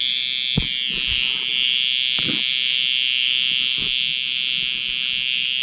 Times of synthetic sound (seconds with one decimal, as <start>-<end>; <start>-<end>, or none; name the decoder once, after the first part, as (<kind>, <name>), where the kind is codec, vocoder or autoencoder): none